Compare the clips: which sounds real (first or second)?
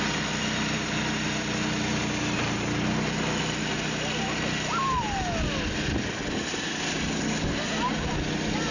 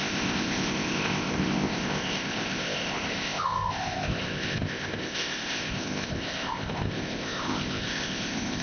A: first